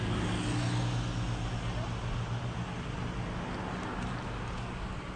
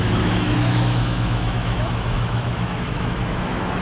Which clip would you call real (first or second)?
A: first